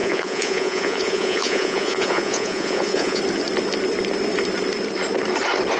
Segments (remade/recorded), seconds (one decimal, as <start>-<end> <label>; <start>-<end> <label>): 0.0-3.2 remade; 3.2-5.8 recorded